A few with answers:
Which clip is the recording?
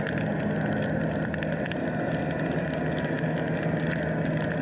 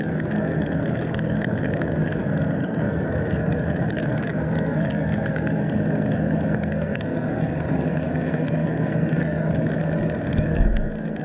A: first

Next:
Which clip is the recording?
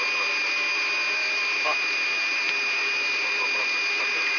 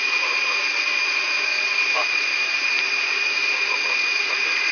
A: first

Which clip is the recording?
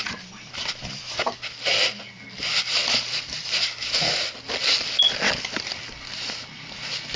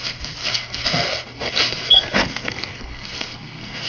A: first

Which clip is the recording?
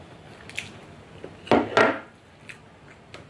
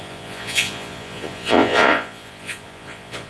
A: first